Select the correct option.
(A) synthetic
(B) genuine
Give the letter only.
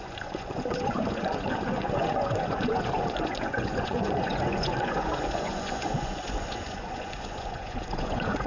A